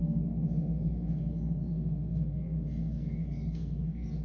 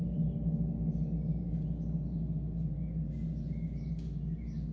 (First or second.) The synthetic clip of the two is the first